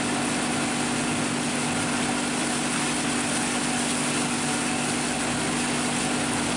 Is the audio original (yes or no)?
yes